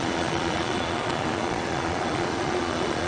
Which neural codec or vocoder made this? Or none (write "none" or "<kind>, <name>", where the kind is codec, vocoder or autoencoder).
vocoder, Vocos